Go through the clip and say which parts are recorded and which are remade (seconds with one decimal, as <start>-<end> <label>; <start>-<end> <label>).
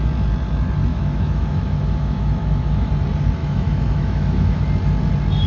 0.0-0.9 recorded; 0.9-2.9 remade; 2.9-3.4 recorded; 3.4-4.6 remade; 4.6-5.5 recorded